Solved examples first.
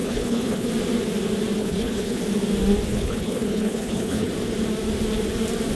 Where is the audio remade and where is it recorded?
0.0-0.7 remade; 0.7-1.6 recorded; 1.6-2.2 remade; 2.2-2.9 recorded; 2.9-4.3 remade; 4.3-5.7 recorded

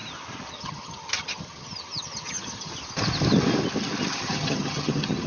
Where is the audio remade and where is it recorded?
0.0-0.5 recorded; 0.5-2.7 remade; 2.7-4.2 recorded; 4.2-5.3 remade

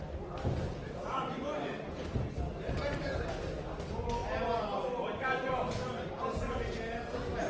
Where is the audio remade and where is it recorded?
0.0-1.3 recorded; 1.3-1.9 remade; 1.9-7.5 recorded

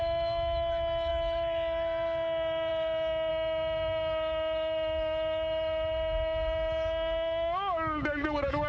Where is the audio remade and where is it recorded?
0.0-3.3 recorded; 3.3-8.7 remade

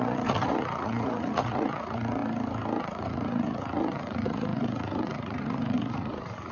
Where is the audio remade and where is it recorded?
0.0-2.2 remade; 2.2-2.8 recorded; 2.8-6.5 remade